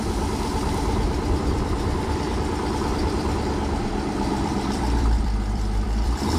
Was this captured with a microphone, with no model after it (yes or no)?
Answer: no